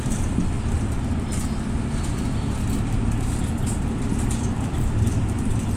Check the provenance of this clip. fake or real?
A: real